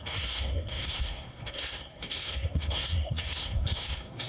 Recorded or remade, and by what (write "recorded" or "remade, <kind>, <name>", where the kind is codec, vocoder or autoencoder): remade, codec, SNAC